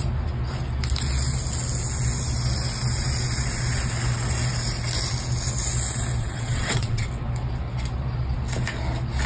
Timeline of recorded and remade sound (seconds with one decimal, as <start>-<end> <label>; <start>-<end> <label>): 0.0-6.2 recorded; 6.2-7.1 remade; 7.1-9.3 recorded